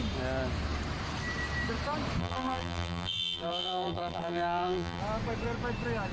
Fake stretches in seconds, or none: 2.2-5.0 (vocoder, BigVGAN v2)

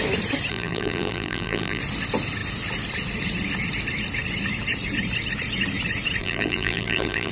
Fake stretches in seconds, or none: 0.5-1.8 (vocoder, BigVGAN v2); 6.2-7.3